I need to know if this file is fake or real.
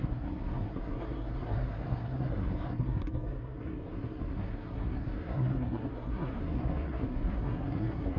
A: fake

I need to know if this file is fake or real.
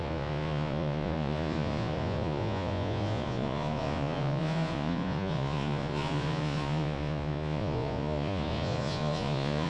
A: fake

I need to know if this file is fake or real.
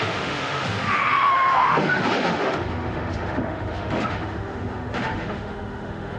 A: fake